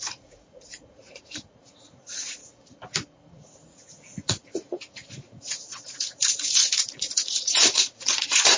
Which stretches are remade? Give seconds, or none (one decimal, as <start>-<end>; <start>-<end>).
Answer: 0.0-2.4; 3.3-8.6